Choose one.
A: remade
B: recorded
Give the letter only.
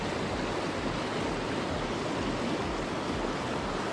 B